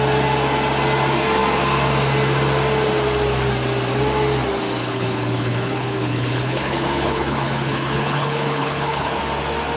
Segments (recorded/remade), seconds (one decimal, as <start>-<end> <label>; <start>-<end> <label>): 0.0-4.8 recorded; 4.8-9.2 remade; 9.2-9.8 recorded